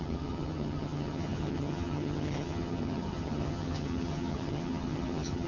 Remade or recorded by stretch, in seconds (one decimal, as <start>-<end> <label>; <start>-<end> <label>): 0.0-5.5 remade